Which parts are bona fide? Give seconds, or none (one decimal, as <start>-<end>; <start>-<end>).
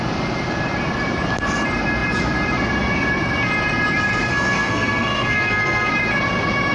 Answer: 0.0-4.3; 5.9-6.7